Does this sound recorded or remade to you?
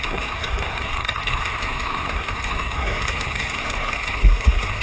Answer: remade